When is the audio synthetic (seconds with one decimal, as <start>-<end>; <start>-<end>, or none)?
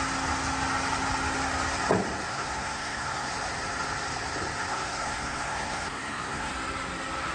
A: 2.3-3.3; 4.7-6.5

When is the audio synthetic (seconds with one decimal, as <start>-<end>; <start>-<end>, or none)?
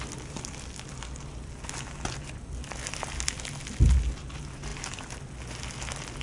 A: none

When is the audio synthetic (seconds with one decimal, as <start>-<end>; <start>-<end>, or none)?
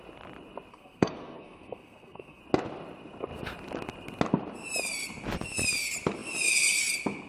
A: 0.7-2.4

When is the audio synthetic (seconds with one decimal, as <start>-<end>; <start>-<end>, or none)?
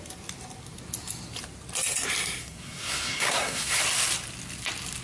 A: 2.4-3.8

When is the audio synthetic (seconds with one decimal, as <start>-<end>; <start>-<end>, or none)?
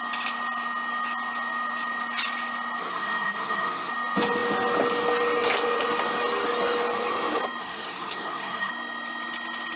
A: 2.8-3.9; 7.6-8.7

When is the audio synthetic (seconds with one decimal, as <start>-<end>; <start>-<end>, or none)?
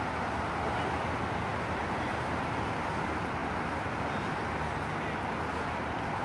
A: none